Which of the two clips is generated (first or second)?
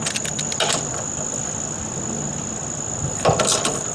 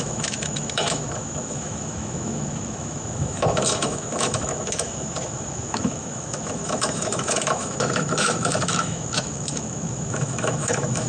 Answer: second